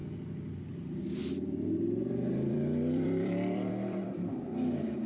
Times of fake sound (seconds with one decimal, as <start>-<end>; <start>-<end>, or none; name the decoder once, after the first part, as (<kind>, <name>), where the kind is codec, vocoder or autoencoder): 1.2-4.3 (vocoder, BigVGAN v2)